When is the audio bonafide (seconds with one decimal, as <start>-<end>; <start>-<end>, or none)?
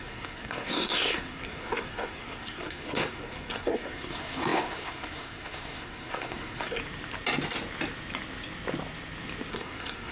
6.8-9.5